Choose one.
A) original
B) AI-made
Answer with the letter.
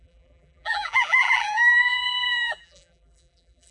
B